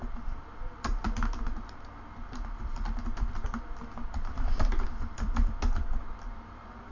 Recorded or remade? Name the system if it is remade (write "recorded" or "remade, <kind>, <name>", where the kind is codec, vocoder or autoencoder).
remade, vocoder, BigVGAN v2